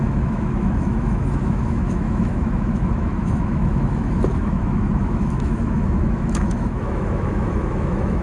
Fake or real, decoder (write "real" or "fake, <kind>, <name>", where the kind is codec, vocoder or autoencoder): fake, autoencoder, DAC-VAE